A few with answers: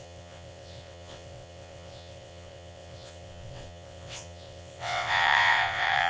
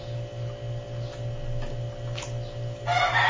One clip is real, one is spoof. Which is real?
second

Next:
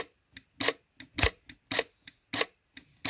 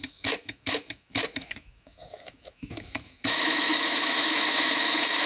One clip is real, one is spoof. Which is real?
first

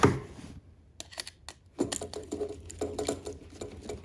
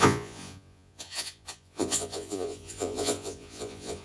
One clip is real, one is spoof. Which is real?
first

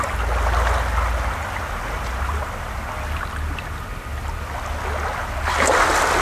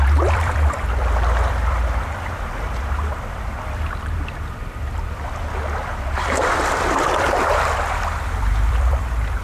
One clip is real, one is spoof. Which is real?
first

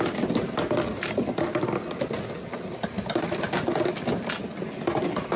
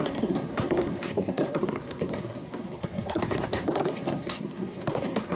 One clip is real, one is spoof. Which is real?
first